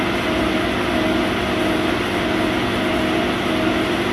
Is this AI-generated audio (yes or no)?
no